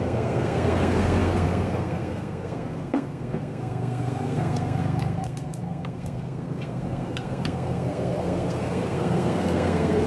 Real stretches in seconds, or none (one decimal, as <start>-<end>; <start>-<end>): none